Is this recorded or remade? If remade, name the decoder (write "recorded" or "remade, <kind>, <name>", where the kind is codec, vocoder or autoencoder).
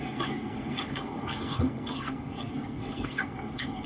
remade, codec, SNAC